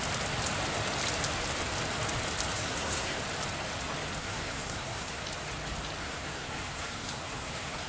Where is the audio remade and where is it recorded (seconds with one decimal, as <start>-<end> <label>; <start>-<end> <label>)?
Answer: 0.0-2.5 recorded; 2.5-3.2 remade; 3.2-4.2 recorded; 4.2-5.2 remade; 5.2-6.0 recorded; 6.0-7.9 remade